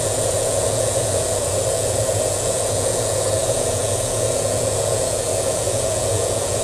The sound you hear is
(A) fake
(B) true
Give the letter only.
A